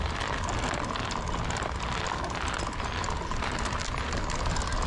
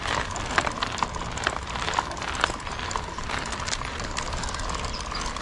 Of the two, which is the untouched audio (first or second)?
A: first